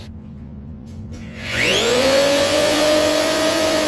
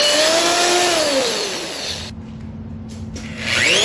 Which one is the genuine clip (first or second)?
second